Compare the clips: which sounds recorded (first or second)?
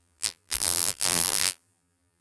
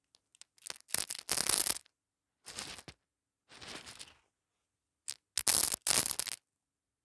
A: second